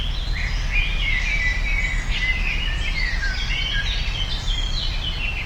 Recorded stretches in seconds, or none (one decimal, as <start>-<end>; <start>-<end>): 0.0-5.5